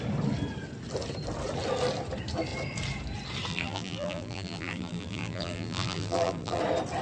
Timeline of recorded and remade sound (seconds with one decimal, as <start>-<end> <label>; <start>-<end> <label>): 0.0-3.5 recorded; 3.5-6.6 remade; 6.6-7.0 recorded